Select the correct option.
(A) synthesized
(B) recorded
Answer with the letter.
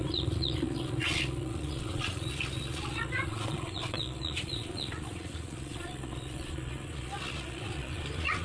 A